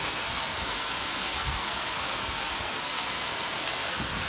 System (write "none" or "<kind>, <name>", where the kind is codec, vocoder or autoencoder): codec, SNAC